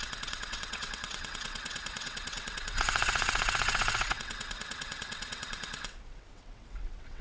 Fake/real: fake